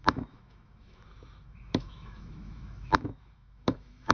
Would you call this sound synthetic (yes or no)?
yes